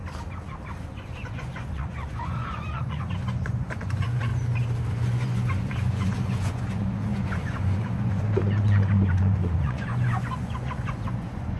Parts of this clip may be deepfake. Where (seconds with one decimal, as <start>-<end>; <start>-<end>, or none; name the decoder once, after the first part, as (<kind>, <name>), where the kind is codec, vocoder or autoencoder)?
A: 0.8-4.3 (vocoder, Vocos); 4.9-11.6